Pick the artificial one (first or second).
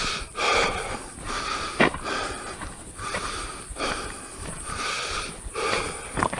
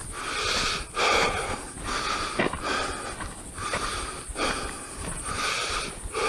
first